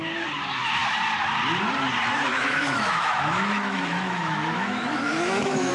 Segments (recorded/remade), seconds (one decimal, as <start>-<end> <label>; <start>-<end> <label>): 0.0-2.3 recorded; 2.3-5.7 remade